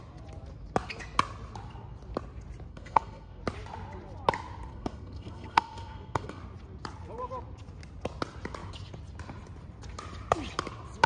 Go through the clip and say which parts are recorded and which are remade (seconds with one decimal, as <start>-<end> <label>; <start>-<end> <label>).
0.0-2.7 recorded; 2.7-3.4 remade; 3.4-4.7 recorded; 4.7-6.4 remade; 6.4-11.1 recorded